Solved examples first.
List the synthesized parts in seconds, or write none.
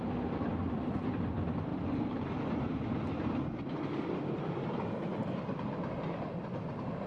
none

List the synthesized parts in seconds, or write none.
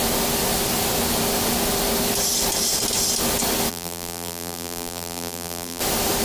3.7-5.8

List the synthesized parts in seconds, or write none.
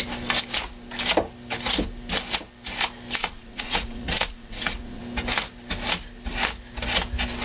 3.2-5.0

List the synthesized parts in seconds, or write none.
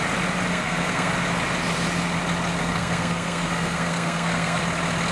0.5-1.1; 2.6-4.6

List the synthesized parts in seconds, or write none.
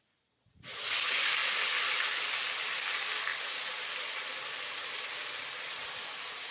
none